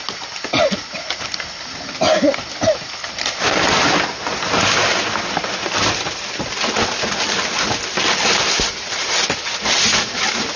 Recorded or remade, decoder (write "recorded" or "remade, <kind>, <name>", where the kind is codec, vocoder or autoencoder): recorded